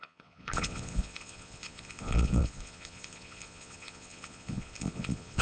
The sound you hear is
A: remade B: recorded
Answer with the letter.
A